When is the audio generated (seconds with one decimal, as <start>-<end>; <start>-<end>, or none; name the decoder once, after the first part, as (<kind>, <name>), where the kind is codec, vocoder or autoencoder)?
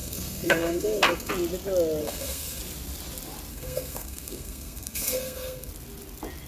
0.0-1.3 (codec, SNAC); 2.0-2.6; 3.5-5.7